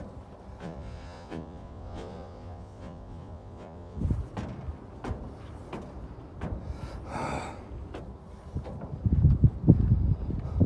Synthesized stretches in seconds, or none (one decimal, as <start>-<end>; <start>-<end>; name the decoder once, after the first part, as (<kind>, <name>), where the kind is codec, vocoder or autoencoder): 0.6-4.0 (vocoder, Vocos)